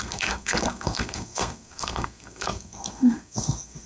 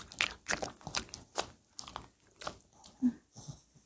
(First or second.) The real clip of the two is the second